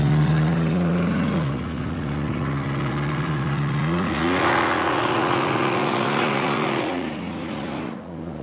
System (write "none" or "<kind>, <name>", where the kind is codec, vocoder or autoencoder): vocoder, Vocos